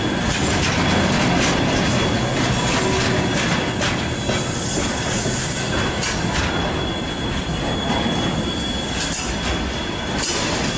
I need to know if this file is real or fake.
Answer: real